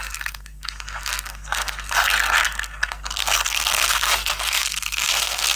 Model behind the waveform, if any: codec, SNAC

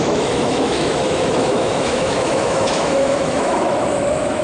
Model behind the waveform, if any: autoencoder, DAC-VAE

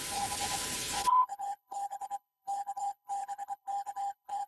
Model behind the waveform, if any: codec, HILCodec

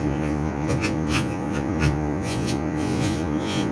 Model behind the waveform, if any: vocoder, Vocos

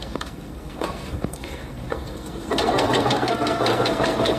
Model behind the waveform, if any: codec, SNAC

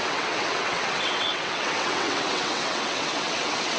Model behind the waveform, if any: vocoder, WaveNeXt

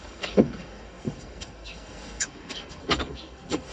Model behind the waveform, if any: codec, SNAC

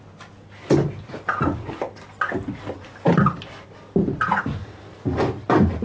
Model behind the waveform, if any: none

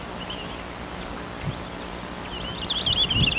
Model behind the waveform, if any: none